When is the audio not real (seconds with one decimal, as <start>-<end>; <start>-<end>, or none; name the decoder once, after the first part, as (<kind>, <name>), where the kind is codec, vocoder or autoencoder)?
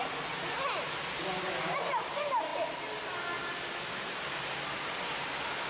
none